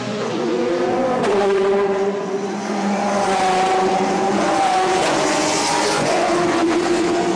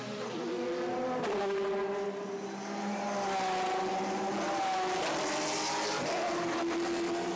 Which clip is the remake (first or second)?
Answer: first